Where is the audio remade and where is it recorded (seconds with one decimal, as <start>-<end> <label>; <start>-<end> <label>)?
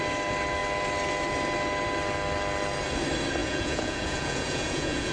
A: 0.0-3.4 recorded; 3.4-5.1 remade